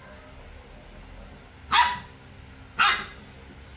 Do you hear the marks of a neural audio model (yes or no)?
no